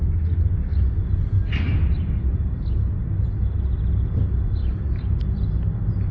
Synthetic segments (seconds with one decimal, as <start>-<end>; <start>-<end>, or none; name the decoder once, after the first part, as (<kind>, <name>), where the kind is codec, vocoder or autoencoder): 4.6-5.2 (vocoder, BigVGAN v2)